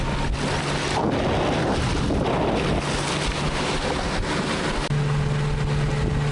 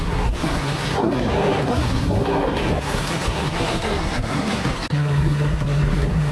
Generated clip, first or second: second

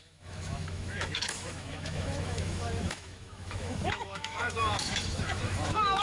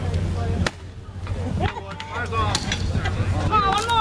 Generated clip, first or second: first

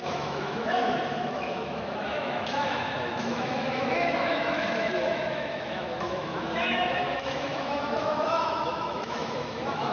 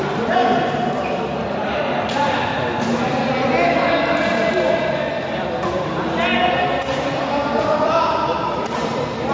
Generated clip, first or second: first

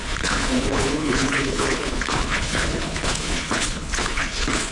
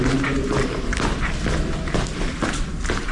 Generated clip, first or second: first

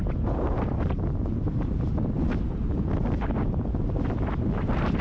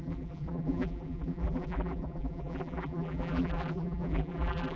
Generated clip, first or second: second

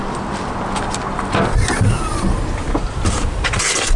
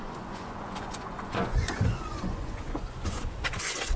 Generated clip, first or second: second